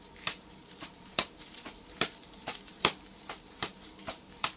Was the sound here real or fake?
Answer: fake